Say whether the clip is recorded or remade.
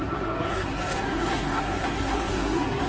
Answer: remade